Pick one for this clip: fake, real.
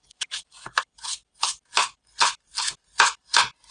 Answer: real